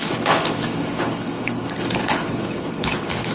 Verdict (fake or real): fake